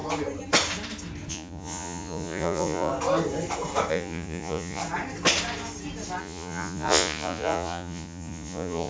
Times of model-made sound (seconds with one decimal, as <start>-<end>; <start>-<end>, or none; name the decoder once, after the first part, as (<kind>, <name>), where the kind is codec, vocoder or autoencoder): 1.3-2.9 (vocoder, Vocos); 3.9-4.8; 6.2-8.9